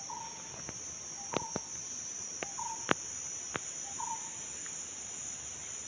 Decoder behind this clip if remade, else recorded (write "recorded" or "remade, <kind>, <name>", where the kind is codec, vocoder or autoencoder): recorded